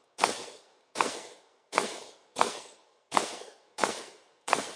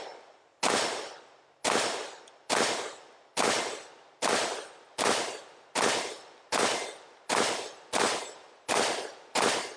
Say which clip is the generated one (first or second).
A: first